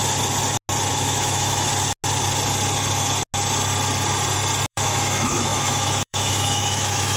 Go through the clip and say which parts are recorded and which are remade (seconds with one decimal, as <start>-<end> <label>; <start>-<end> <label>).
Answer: 0.0-0.9 recorded; 0.9-1.7 remade; 1.7-4.7 recorded; 4.7-7.2 remade